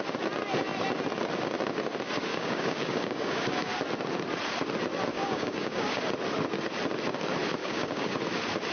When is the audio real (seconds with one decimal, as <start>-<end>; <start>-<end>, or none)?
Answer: 0.0-2.3; 3.7-5.1; 6.0-7.6; 8.2-8.7